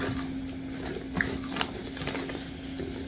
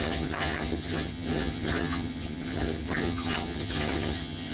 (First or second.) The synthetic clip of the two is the second